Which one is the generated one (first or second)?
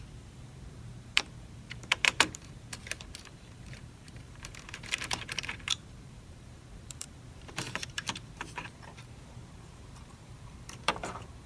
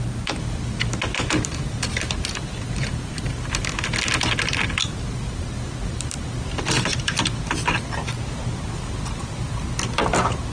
first